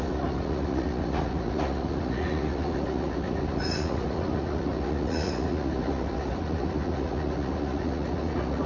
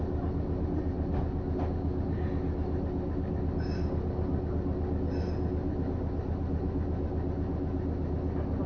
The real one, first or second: second